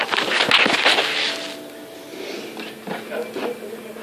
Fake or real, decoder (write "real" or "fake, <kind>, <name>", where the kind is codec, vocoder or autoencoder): real